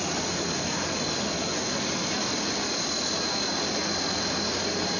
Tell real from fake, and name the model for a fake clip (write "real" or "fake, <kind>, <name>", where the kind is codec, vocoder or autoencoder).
real